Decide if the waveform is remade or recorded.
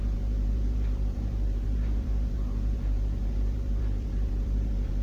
remade